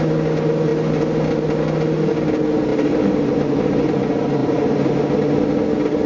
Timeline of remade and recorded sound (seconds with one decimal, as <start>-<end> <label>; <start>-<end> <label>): 0.0-2.7 recorded; 2.7-4.0 remade; 4.0-4.4 recorded; 4.4-4.9 remade; 4.9-6.1 recorded